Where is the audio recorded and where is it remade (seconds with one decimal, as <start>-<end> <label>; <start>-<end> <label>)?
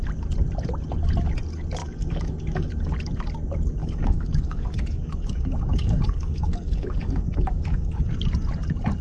0.0-1.8 recorded; 1.8-2.7 remade; 2.7-3.8 recorded; 3.8-8.0 remade; 8.0-9.0 recorded